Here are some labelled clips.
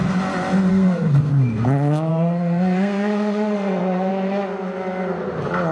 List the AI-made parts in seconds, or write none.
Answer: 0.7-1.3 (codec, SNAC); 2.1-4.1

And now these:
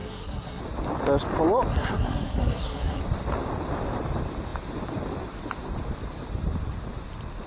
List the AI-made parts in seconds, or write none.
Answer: 0.0-0.6 (codec, SNAC); 1.7-3.0

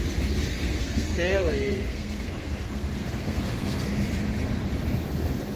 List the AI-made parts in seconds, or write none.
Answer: 0.5-3.9 (codec, SNAC)